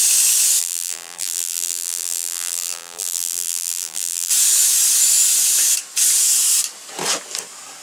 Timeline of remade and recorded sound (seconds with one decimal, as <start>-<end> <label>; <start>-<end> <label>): 0.0-0.6 recorded; 0.6-4.3 remade; 4.3-7.8 recorded